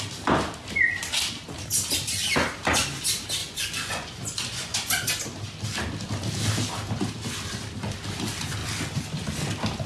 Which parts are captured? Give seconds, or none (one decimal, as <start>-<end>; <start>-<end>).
0.0-3.4; 4.9-9.9